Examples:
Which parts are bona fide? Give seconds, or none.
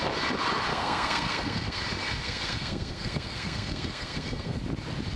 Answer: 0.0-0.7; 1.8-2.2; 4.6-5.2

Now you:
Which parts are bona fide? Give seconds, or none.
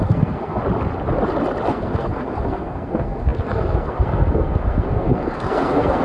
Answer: 0.6-1.7